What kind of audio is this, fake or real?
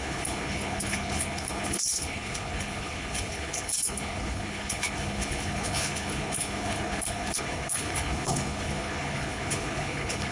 fake